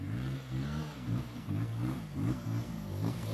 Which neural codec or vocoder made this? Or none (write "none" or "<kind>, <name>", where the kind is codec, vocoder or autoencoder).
codec, SNAC